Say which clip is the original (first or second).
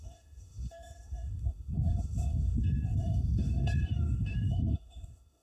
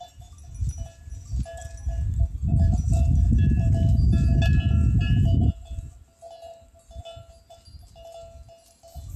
second